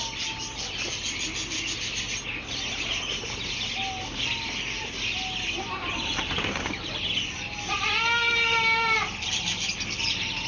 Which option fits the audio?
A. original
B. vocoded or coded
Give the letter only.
A